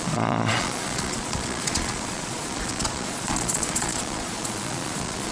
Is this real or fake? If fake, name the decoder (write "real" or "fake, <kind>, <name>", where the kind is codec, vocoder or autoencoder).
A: fake, vocoder, Vocos